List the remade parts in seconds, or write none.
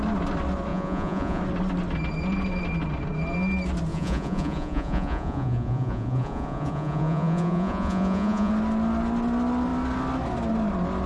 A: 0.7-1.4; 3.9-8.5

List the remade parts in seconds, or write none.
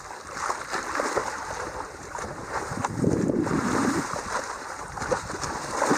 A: 1.4-5.0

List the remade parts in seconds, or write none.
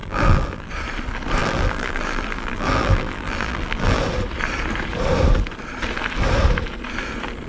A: 0.0-0.7; 1.4-4.0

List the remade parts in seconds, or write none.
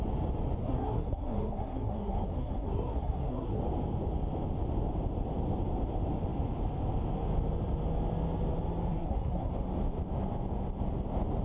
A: 0.6-3.6; 8.9-9.5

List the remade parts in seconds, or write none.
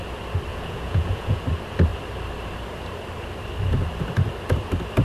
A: 0.5-1.4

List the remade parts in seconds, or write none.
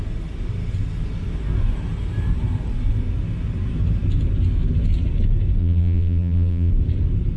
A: 5.6-6.7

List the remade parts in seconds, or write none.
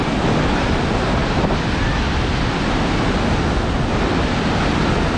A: none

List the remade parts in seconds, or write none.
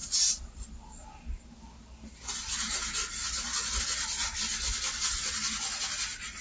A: none